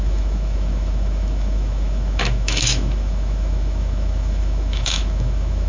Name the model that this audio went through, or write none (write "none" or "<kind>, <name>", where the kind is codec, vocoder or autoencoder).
autoencoder, DAC-VAE